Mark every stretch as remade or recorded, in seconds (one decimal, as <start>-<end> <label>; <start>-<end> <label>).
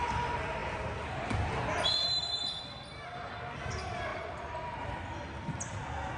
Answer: 0.0-6.2 recorded